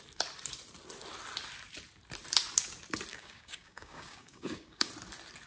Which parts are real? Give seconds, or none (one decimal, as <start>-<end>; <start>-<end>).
0.0-3.1; 4.9-5.5